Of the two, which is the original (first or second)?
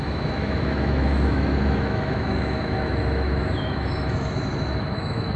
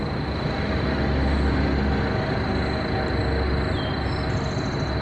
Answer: second